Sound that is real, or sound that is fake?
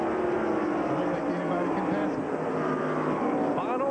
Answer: real